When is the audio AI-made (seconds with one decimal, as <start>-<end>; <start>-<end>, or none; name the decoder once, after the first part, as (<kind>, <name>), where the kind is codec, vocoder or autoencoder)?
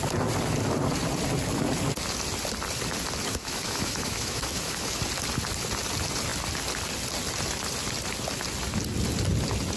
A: 3.3-5.0 (autoencoder, DAC-VAE)